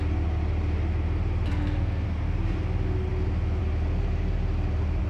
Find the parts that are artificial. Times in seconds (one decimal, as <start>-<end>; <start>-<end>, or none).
1.5-2.1